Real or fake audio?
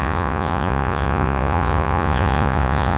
fake